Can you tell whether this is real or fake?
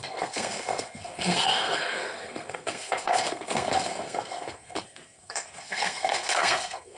fake